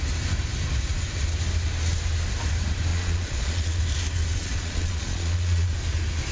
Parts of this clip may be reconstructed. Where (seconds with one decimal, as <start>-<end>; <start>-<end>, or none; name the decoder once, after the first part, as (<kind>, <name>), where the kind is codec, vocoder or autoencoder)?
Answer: 2.9-3.8 (vocoder, Vocos); 4.4-5.7